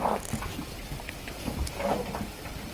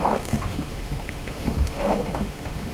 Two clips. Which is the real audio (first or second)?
first